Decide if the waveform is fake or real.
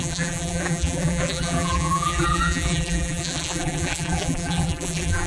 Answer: fake